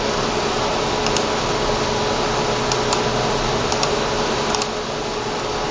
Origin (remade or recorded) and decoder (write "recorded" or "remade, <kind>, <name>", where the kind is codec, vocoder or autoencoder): recorded